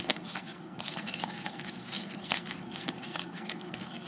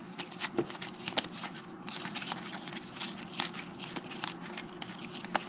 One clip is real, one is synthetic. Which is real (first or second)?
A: second